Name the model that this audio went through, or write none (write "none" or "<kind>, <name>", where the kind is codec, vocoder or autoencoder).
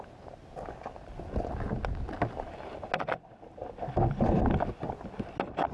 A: none